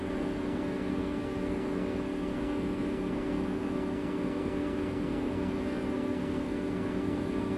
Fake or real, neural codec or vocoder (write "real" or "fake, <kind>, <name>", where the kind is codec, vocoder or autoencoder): fake, codec, SNAC